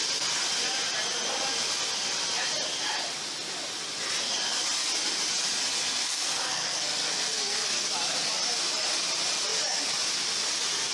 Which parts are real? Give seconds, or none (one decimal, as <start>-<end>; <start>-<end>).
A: 0.0-6.0; 7.9-10.9